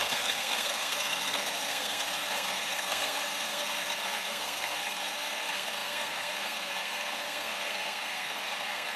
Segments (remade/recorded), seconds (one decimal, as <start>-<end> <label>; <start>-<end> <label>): 0.0-9.0 remade

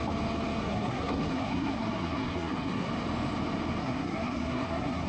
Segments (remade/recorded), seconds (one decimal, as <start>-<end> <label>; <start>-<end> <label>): 0.0-0.6 recorded; 0.6-2.9 remade; 2.9-3.8 recorded; 3.8-5.1 remade

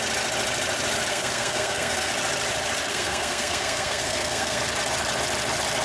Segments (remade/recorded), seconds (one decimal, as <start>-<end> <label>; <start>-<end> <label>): 0.0-1.1 recorded; 1.1-2.1 remade; 2.1-2.9 recorded; 2.9-4.6 remade; 4.6-5.8 recorded

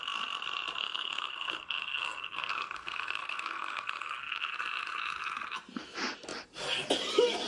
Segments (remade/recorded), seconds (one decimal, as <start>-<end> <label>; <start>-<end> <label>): 0.0-0.8 recorded; 0.8-4.5 remade; 4.5-7.5 recorded

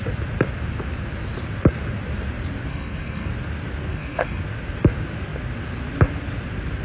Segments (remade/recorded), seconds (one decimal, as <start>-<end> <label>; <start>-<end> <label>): 0.0-2.7 recorded; 2.7-3.3 remade; 3.3-3.9 recorded; 3.9-4.4 remade; 4.4-6.8 recorded

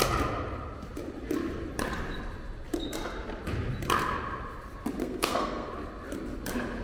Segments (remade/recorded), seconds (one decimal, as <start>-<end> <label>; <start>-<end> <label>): 0.0-5.0 recorded; 5.0-5.7 remade; 5.7-6.8 recorded

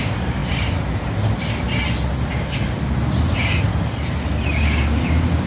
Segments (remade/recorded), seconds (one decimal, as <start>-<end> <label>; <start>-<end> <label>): 0.0-5.5 recorded